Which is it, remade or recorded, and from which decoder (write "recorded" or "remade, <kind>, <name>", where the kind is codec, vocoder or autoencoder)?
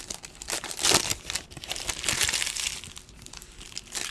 recorded